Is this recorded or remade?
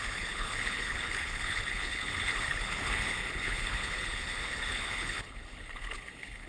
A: remade